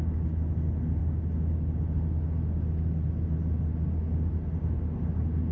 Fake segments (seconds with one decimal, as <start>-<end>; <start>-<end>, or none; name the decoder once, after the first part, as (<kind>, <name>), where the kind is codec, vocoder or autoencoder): none